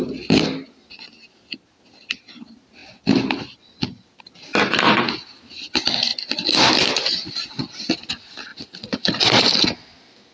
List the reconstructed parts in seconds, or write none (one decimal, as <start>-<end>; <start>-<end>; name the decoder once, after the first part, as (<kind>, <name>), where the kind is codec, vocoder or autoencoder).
8.5-9.2 (vocoder, Vocos)